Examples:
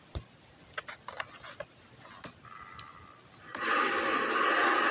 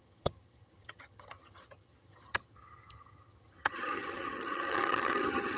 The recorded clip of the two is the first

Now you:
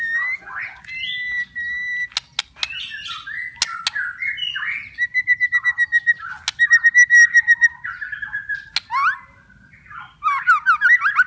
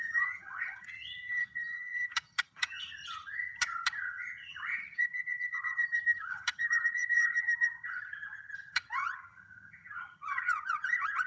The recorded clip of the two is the first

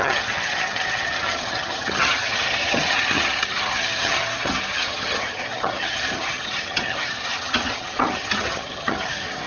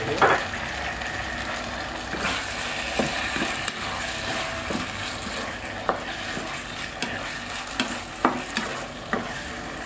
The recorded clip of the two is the second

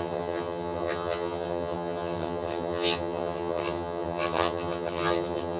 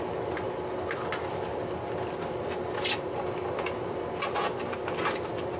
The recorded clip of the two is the second